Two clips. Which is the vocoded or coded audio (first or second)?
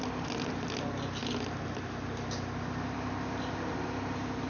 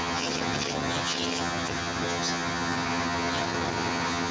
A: second